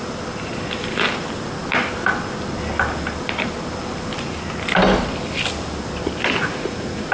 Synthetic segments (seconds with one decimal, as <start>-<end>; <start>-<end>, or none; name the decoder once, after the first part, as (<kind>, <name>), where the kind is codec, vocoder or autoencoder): 6.4-7.1 (vocoder, Vocos)

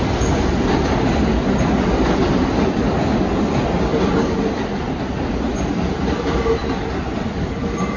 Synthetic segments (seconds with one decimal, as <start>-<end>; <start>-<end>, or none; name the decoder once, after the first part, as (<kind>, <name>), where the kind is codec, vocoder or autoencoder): none

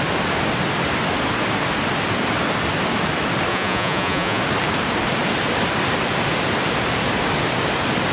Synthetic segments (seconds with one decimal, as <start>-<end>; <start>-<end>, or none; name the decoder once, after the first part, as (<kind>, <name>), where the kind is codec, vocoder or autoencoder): 3.5-4.4 (vocoder, Vocos)

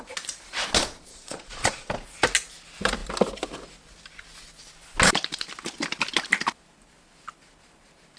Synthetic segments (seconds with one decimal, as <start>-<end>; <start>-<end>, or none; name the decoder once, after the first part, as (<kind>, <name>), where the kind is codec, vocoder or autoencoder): 1.1-1.9 (vocoder, Vocos)

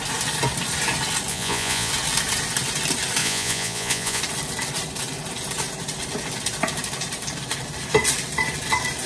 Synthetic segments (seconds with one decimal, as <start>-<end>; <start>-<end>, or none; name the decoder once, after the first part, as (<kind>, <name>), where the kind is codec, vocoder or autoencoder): 1.3-1.9 (vocoder, Vocos); 3.2-4.2

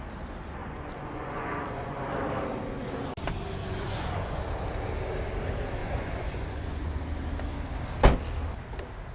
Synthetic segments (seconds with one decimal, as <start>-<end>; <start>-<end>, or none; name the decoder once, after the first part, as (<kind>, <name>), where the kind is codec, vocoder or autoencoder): 0.6-2.1 (vocoder, Vocos); 3.6-4.4; 5.8-7.0

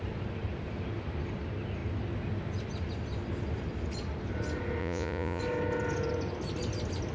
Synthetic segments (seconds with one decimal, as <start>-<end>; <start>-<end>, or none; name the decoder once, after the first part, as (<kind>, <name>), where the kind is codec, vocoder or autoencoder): 4.8-5.4 (vocoder, Vocos)

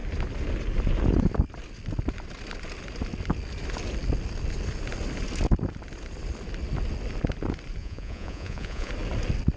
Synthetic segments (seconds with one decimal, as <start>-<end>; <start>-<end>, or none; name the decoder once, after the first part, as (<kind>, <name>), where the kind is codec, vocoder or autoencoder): 7.8-8.9 (vocoder, Vocos)